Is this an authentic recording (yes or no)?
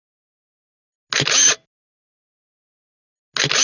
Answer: yes